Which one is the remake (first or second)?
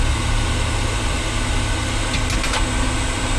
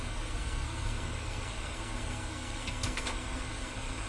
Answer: second